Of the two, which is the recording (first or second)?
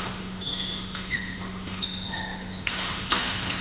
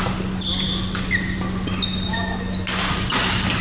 second